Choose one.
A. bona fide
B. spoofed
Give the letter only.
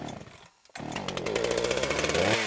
A